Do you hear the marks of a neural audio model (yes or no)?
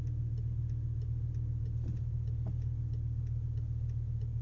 no